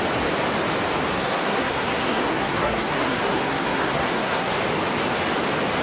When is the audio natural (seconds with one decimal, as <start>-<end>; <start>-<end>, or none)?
0.0-1.1; 4.6-5.8